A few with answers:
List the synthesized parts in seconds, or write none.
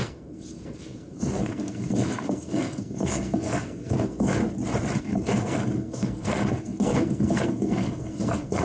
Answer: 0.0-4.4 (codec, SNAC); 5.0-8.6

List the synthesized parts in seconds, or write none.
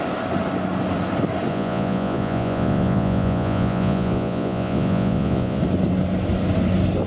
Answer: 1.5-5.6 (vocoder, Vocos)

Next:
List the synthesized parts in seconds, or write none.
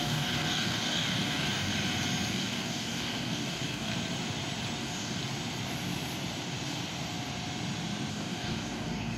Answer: 0.0-1.7 (codec, DAC); 2.3-3.9; 4.8-5.2; 8.1-9.2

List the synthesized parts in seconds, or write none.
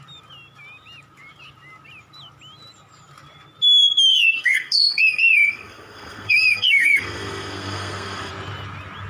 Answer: 4.1-8.3 (codec, SNAC)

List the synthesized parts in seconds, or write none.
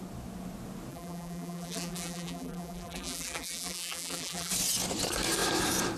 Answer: 0.9-4.5 (vocoder, BigVGAN v2)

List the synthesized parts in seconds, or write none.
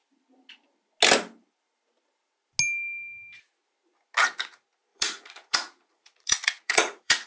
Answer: 4.9-7.3 (vocoder, Vocos)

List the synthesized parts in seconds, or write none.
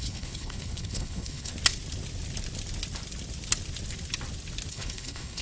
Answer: 0.0-1.5 (codec, HILCodec); 4.7-5.4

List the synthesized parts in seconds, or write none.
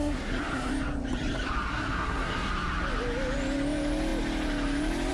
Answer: 0.0-0.7 (codec, SNAC); 1.7-2.5